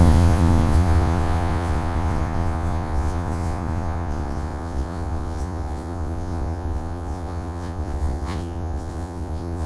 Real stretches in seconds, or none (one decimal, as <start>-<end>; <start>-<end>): none